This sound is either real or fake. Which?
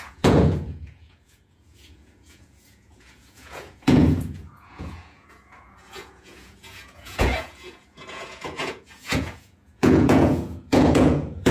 fake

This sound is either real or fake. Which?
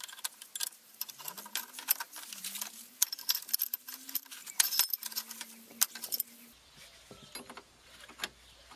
real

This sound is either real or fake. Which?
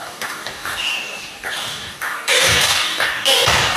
fake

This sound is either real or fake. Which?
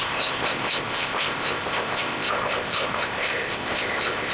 fake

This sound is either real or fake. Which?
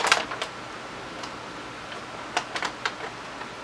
real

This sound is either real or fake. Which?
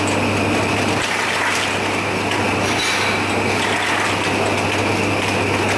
real